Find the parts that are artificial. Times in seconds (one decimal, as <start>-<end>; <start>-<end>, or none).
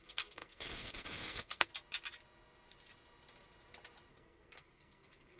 0.0-1.7; 4.1-5.4